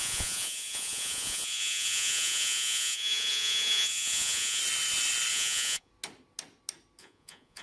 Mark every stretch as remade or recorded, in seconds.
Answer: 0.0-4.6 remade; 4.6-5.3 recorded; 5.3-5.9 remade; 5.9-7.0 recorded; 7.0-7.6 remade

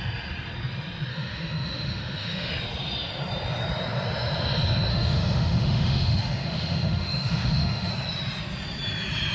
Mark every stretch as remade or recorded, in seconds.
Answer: 0.0-1.1 recorded; 1.1-2.5 remade; 2.5-4.9 recorded; 4.9-7.9 remade; 7.9-9.3 recorded

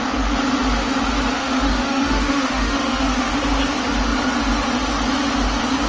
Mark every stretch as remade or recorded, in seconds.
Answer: 0.0-1.4 recorded; 1.4-3.3 remade; 3.3-5.9 recorded

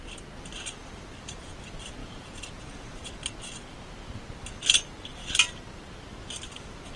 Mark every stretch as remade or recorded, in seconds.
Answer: 0.0-2.0 recorded; 2.0-3.1 remade; 3.1-7.0 recorded